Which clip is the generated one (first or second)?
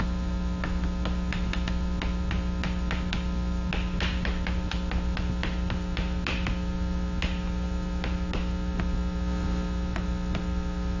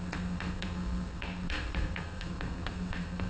second